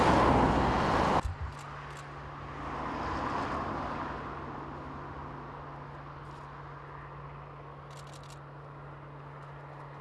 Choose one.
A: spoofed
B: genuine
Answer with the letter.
B